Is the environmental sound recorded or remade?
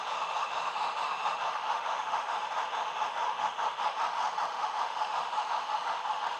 remade